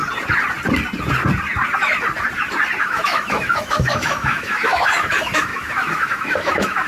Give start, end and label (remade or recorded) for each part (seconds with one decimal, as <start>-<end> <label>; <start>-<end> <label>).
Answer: 0.0-2.8 recorded; 2.8-6.9 remade